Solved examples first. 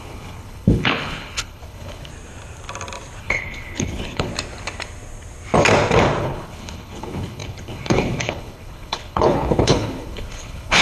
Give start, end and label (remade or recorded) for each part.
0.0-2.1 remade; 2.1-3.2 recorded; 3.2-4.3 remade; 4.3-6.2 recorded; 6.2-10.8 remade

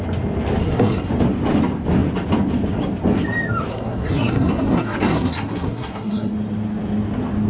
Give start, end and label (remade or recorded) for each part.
0.0-0.6 recorded; 0.6-1.1 remade; 1.1-3.7 recorded; 3.7-6.3 remade; 6.3-7.5 recorded

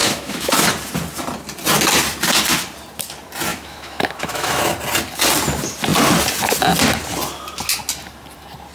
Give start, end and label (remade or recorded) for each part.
0.0-0.7 remade; 0.7-3.5 recorded; 3.5-4.6 remade; 4.6-8.7 recorded

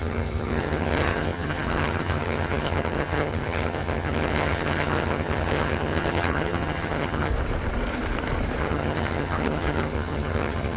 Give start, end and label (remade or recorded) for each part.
0.0-7.3 remade; 7.3-8.6 recorded; 8.6-10.8 remade